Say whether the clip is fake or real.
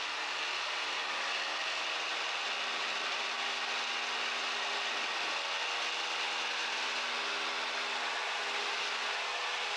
real